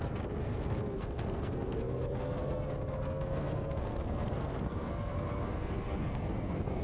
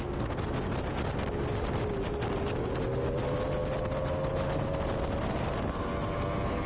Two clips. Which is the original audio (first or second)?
second